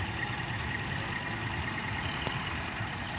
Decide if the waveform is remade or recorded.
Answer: recorded